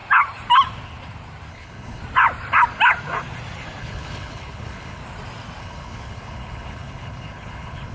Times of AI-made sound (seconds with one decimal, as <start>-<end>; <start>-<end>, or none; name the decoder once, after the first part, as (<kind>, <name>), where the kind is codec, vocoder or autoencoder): 1.5-2.0 (codec, HILCodec); 3.8-5.0; 5.6-7.9